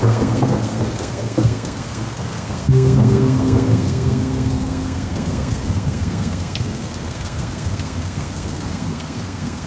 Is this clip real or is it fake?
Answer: fake